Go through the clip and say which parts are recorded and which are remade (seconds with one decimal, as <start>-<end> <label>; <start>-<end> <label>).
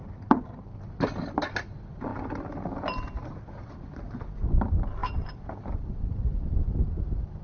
0.0-2.1 recorded; 2.1-4.0 remade; 4.0-7.4 recorded